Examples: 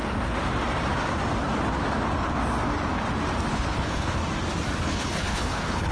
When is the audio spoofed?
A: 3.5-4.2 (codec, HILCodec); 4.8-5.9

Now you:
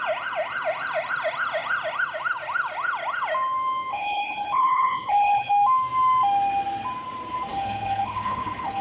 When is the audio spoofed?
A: 3.9-5.5 (codec, HILCodec); 7.5-8.8

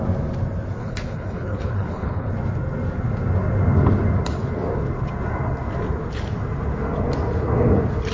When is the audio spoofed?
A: 0.8-2.3 (codec, HILCodec)

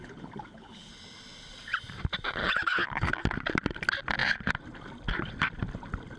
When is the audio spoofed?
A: 0.0-0.9 (codec, HILCodec); 2.4-3.1